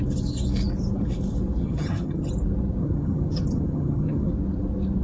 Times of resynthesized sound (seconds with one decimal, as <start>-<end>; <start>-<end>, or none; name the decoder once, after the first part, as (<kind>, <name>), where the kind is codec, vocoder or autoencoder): 1.6-2.3 (vocoder, HiFi-GAN); 2.8-4.3